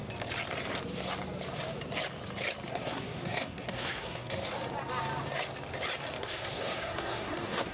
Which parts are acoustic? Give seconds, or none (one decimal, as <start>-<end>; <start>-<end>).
0.0-2.7; 4.4-6.2